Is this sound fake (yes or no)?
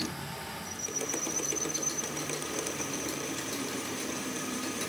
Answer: yes